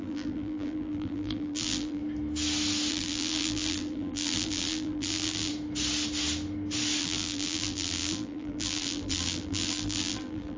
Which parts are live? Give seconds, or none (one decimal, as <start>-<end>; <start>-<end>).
2.0-2.9; 5.5-7.0